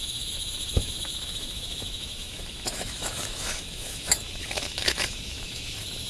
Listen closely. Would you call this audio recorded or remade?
remade